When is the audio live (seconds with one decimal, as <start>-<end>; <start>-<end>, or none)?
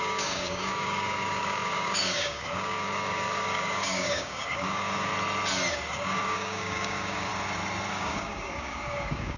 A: 5.1-5.7; 7.3-7.9